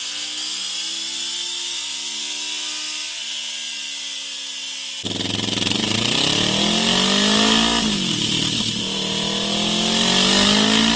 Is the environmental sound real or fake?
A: real